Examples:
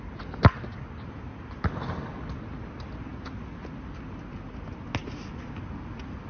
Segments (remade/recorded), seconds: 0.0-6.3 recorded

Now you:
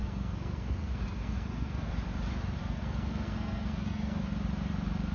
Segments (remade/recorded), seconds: 0.0-1.9 remade; 1.9-2.6 recorded; 2.6-4.2 remade; 4.2-5.1 recorded

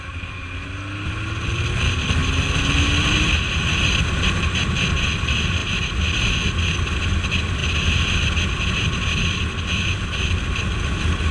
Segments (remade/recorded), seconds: 0.0-11.3 recorded

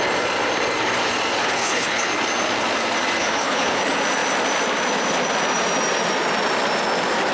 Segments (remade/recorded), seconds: 0.0-1.4 recorded; 1.4-2.1 remade; 2.1-3.2 recorded; 3.2-3.8 remade; 3.8-7.3 recorded

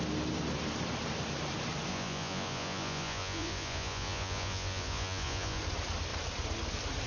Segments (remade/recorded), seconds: 0.0-1.9 recorded; 1.9-5.6 remade; 5.6-7.1 recorded

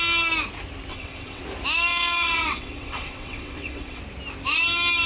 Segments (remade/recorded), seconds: 0.0-0.9 recorded; 0.9-1.4 remade; 1.4-1.9 recorded; 1.9-4.0 remade; 4.0-5.1 recorded

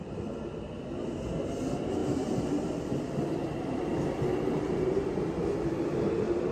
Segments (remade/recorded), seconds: 0.0-0.6 remade; 0.6-2.0 recorded; 2.0-5.9 remade; 5.9-6.5 recorded